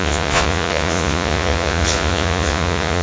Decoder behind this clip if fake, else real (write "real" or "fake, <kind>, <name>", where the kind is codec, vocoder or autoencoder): fake, vocoder, Vocos